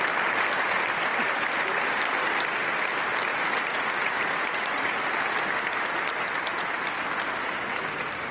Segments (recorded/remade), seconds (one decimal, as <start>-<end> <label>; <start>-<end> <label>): 0.0-3.3 recorded; 3.3-5.0 remade; 5.0-8.3 recorded